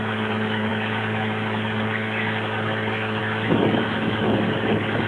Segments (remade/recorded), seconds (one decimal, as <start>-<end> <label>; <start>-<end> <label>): 0.0-5.1 remade